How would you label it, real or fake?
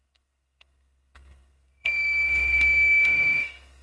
fake